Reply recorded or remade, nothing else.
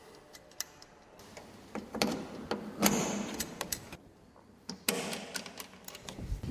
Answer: recorded